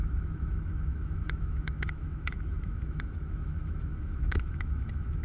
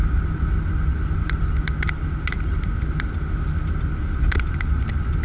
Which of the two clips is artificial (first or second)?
first